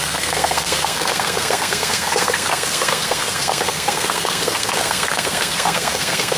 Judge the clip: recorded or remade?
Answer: remade